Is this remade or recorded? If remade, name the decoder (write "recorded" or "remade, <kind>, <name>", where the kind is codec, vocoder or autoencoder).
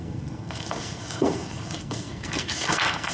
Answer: remade, codec, SNAC